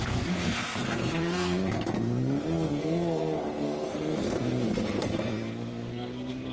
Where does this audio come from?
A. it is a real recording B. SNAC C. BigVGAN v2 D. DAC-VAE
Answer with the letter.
B